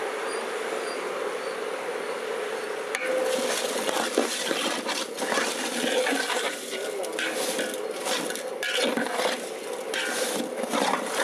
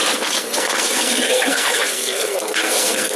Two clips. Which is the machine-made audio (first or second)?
second